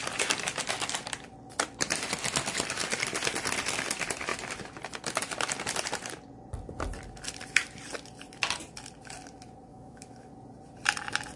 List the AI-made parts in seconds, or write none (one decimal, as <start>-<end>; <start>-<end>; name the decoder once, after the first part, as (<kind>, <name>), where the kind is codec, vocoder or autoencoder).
9.7-10.3 (autoencoder, DAC-VAE)